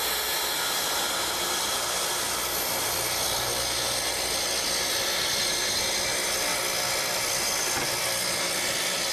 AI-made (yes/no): no